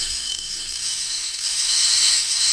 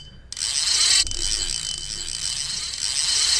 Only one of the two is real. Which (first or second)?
second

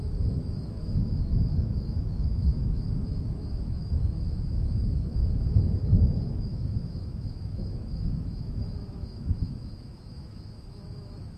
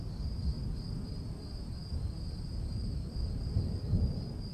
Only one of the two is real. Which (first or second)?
second